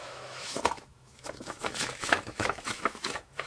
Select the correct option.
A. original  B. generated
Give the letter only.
B